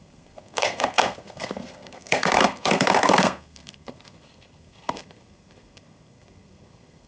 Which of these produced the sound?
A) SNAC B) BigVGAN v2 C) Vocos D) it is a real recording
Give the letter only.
A